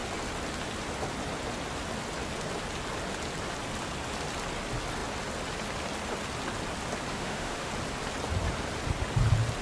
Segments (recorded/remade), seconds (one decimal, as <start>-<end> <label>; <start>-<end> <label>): 0.0-7.1 recorded; 7.1-7.7 remade; 7.7-9.6 recorded